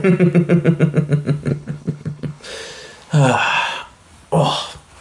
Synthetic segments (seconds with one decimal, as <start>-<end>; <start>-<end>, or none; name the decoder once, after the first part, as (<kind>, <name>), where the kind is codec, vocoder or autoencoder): 1.5-2.5 (codec, HILCodec)